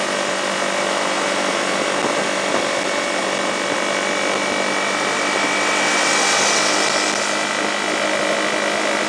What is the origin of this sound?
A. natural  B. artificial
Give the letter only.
A